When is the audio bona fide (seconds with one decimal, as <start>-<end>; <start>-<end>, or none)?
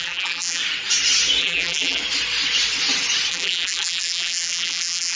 0.6-1.4; 2.0-3.3